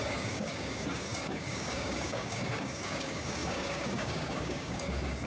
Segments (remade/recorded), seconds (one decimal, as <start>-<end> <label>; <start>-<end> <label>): 0.0-5.3 remade